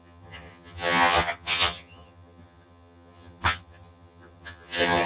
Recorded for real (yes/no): no